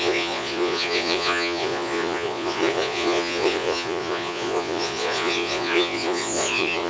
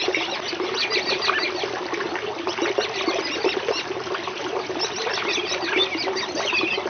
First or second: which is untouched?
second